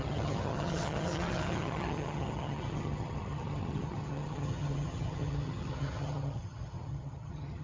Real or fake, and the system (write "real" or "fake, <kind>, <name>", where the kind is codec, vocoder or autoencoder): fake, vocoder, HiFi-GAN